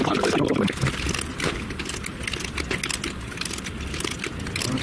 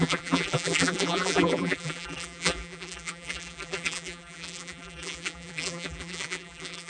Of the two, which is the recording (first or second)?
first